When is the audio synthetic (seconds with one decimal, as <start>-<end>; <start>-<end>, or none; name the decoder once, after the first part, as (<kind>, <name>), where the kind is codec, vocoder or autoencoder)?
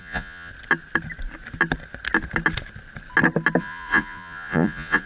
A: 0.0-0.5 (vocoder, Vocos); 3.6-5.1